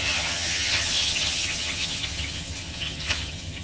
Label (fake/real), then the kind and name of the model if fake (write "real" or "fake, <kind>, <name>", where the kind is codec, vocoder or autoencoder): fake, vocoder, HiFi-GAN